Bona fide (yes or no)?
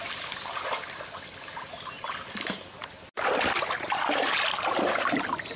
yes